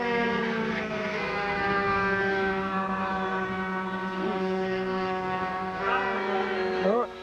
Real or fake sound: fake